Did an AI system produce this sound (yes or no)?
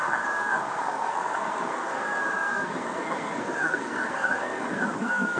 yes